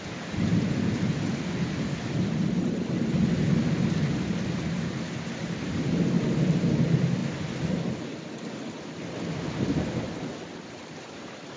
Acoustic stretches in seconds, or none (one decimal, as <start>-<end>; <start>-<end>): 0.0-11.6